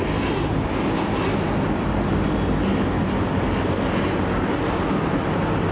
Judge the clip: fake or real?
real